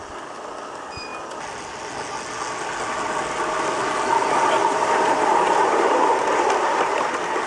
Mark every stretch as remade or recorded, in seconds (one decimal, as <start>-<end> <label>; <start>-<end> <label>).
0.0-4.6 recorded; 4.6-6.3 remade; 6.3-7.5 recorded